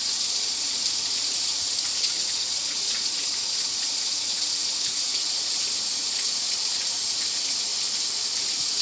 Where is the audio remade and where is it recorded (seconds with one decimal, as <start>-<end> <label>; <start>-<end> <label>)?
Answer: 0.0-7.7 remade; 7.7-8.4 recorded; 8.4-8.8 remade